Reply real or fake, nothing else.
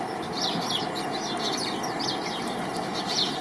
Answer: real